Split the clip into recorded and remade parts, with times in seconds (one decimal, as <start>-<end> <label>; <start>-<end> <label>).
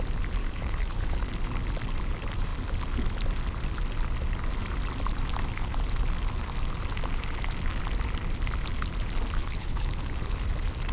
0.0-0.4 recorded; 0.4-1.2 remade; 1.2-9.4 recorded; 9.4-10.4 remade; 10.4-10.9 recorded